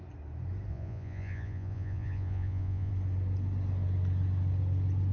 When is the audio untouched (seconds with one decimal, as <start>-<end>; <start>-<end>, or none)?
0.0-0.7; 2.9-5.1